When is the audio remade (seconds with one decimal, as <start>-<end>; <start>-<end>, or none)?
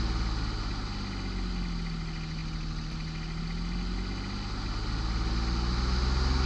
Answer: none